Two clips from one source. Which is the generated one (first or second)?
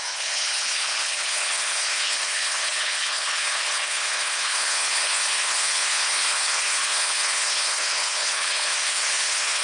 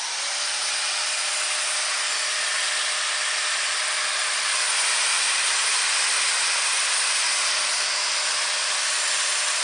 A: first